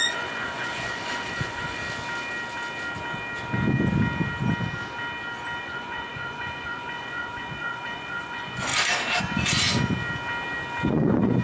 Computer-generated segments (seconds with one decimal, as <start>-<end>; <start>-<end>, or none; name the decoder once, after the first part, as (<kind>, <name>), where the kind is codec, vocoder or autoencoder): 0.0-1.8 (vocoder, Vocos); 5.6-8.7; 9.2-10.0; 10.9-11.4